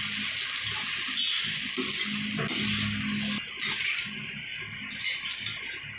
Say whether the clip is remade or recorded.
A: recorded